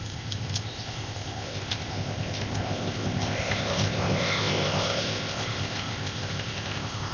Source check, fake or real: fake